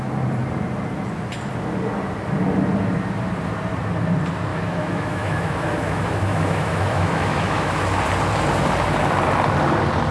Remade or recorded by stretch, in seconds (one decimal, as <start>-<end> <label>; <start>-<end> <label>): 0.0-4.5 recorded; 4.5-7.8 remade; 7.8-10.1 recorded

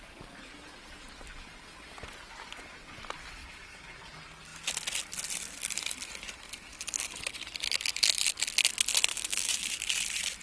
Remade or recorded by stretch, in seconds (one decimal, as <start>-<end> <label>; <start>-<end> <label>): 0.0-9.1 recorded; 9.1-9.6 remade; 9.6-10.4 recorded

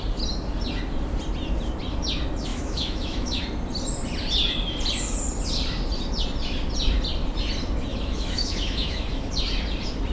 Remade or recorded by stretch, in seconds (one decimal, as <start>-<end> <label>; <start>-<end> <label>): 0.0-2.5 recorded; 2.5-3.4 remade; 3.4-7.9 recorded; 7.9-9.3 remade; 9.3-10.1 recorded

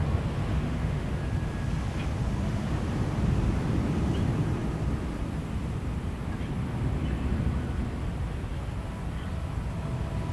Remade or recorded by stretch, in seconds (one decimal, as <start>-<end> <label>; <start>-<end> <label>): 0.0-0.5 recorded; 0.5-1.2 remade; 1.2-10.3 recorded

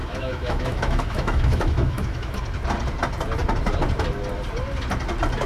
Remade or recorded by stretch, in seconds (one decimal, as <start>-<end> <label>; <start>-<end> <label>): 0.0-2.4 remade; 2.4-5.5 recorded